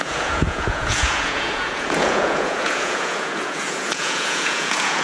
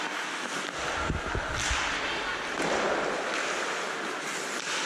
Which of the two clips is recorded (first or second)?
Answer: second